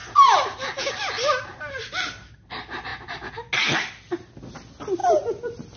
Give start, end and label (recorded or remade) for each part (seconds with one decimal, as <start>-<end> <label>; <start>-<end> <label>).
0.0-1.6 remade; 1.6-5.0 recorded; 5.0-5.8 remade